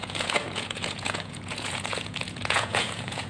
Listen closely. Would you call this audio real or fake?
fake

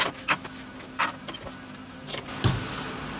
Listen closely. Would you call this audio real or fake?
real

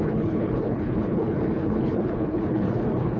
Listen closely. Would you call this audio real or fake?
fake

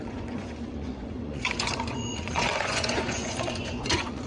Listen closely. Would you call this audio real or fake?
fake